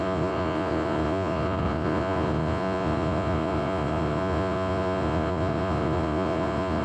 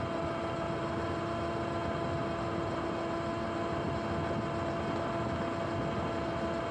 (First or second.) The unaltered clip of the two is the second